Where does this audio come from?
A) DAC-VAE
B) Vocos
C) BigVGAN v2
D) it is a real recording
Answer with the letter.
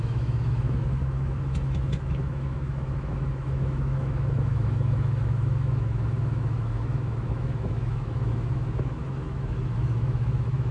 A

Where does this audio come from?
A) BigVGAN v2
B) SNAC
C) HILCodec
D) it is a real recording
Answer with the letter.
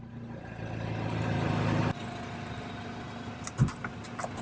D